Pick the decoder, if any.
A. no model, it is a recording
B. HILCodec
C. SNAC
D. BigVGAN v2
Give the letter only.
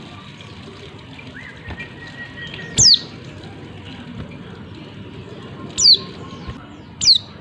A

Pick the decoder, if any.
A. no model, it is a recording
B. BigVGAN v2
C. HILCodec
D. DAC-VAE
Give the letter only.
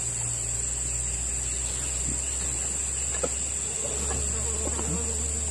A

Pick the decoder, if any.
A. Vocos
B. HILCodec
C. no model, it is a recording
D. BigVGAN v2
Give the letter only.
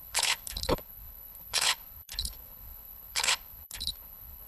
B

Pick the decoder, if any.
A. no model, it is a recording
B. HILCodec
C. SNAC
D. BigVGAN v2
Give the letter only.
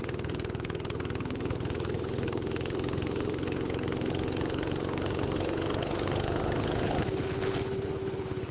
B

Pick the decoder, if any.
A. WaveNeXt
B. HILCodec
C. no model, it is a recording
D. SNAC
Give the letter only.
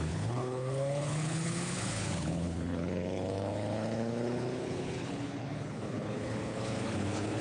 B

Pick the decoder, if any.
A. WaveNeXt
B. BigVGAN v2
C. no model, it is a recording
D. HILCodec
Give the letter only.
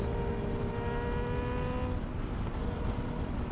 C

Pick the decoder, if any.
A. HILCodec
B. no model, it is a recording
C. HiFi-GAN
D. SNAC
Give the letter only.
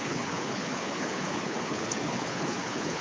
A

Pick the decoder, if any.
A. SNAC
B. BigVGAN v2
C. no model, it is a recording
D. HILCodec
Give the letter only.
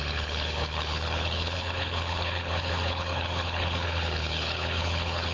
D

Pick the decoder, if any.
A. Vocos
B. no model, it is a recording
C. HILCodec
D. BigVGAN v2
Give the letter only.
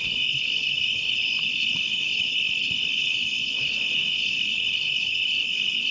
C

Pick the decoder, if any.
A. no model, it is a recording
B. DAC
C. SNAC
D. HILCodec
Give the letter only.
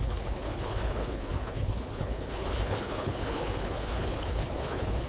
D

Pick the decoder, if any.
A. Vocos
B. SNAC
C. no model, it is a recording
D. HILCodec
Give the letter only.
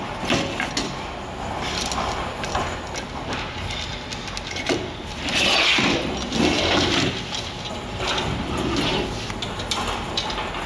C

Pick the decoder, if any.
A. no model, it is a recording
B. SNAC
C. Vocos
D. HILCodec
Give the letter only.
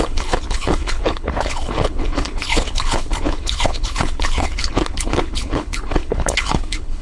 D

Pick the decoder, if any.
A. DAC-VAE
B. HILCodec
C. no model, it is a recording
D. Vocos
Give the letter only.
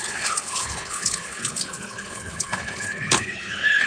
B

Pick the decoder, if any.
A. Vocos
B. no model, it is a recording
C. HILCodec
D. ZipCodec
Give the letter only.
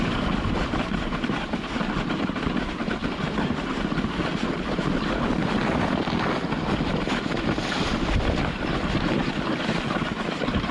B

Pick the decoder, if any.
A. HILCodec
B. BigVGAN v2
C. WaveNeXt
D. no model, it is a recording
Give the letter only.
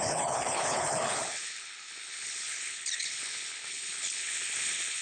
A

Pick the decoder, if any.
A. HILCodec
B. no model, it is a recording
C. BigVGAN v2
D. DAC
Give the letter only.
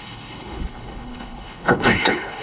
A